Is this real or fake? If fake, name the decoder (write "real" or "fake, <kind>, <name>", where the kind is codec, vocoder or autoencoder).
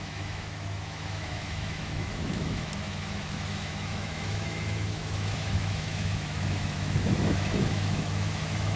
fake, autoencoder, DAC-VAE